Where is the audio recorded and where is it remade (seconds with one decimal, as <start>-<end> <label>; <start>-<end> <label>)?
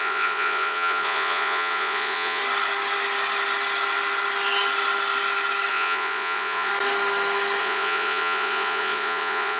0.0-2.4 remade; 2.4-5.7 recorded; 5.7-6.7 remade; 6.7-7.6 recorded; 7.6-9.6 remade